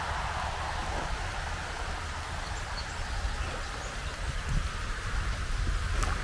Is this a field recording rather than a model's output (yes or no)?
yes